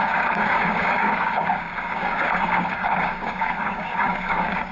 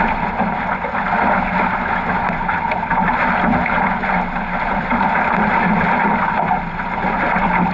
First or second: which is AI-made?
first